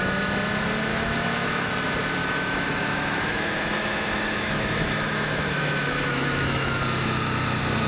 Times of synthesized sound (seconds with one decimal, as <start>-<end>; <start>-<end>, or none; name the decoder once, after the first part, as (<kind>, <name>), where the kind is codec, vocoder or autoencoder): 0.9-1.7 (autoencoder, DAC-VAE); 2.2-6.8

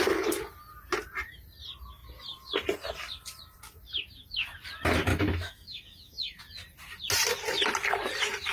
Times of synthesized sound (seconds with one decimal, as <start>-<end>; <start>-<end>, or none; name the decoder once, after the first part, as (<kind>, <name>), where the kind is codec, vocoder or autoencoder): 5.1-6.4 (autoencoder, DAC-VAE)

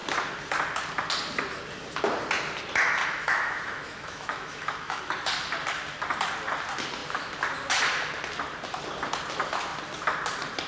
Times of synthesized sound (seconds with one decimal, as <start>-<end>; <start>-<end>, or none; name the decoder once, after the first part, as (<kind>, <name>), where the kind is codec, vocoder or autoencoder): 3.0-5.0 (autoencoder, DAC-VAE)

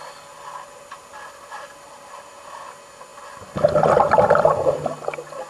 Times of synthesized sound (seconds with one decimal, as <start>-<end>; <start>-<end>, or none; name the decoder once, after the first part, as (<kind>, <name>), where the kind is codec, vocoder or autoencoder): none

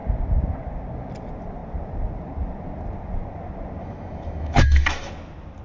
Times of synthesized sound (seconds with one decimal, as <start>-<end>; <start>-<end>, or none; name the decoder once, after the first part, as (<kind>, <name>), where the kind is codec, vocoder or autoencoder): 3.8-5.1 (autoencoder, DAC-VAE)